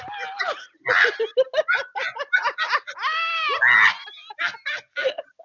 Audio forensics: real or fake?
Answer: real